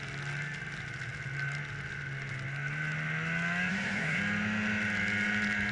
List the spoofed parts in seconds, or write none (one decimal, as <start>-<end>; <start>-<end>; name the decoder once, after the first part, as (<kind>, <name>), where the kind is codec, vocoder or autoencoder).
3.7-4.2 (codec, SNAC)